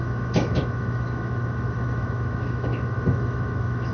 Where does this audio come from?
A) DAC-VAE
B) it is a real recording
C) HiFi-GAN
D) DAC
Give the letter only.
A